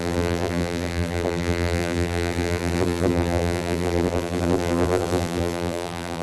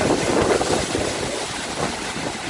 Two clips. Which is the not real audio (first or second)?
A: first